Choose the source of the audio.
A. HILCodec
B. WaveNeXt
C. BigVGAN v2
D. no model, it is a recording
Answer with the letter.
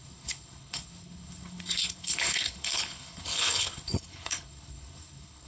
A